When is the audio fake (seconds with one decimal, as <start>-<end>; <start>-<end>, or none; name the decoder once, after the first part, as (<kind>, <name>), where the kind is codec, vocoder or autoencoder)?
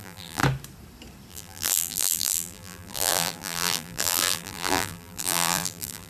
0.0-0.4 (vocoder, BigVGAN v2); 1.3-6.1